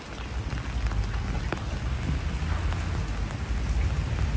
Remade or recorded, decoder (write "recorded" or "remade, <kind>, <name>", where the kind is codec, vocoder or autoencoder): recorded